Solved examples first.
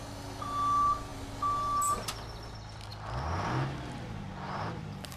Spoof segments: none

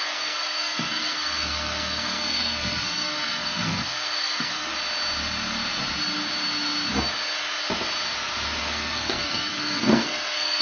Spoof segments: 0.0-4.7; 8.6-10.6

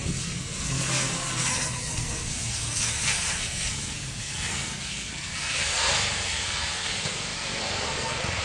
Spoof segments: 0.0-8.4

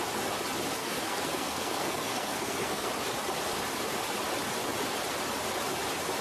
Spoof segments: 0.8-2.9

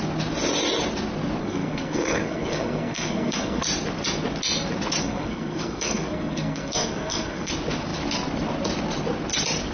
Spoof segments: 1.4-3.6; 5.0-7.5